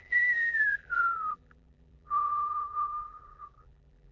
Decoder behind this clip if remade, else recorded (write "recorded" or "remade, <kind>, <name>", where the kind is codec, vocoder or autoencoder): remade, vocoder, BigVGAN v2